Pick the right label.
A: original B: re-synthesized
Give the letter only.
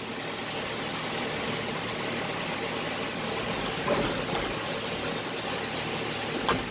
A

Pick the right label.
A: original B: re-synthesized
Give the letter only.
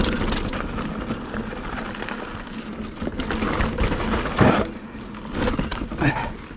A